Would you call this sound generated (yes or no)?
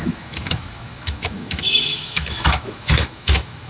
yes